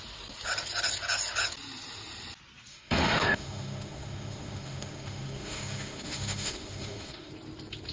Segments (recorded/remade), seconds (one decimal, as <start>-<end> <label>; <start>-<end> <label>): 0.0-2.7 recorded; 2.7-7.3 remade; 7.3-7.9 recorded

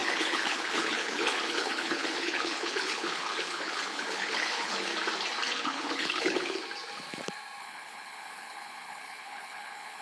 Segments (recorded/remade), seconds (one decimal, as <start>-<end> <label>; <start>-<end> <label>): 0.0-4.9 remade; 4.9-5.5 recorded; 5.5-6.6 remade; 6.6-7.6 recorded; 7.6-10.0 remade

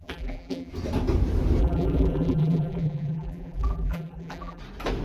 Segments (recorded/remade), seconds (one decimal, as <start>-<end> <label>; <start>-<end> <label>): 0.0-0.7 remade; 0.7-1.6 recorded; 1.6-4.6 remade; 4.6-5.0 recorded

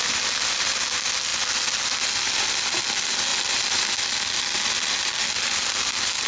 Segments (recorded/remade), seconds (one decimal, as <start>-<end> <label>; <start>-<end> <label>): 0.0-3.3 recorded; 3.3-3.9 remade; 3.9-6.3 recorded